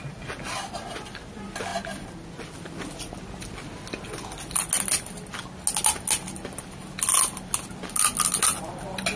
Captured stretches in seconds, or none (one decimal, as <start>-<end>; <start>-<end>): 0.0-9.2